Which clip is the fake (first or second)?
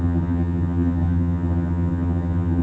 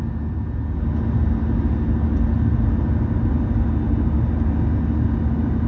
first